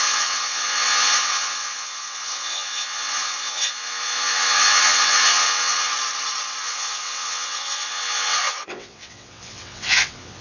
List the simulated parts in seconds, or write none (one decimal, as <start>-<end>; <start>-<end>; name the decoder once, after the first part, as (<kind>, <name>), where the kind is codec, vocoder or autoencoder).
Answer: 0.0-5.9 (vocoder, WaveNeXt); 6.6-10.4